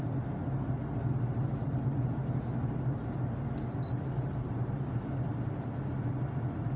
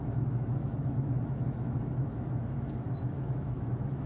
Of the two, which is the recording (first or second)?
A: first